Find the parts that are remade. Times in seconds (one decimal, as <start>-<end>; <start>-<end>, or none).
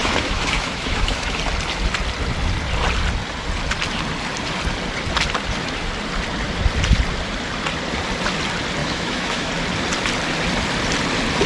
0.0-1.4; 8.8-9.5